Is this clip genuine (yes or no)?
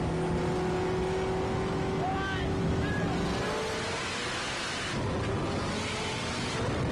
yes